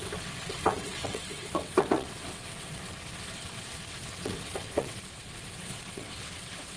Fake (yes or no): yes